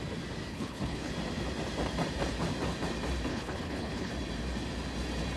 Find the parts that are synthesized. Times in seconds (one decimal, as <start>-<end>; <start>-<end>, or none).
0.5-1.1; 3.3-4.1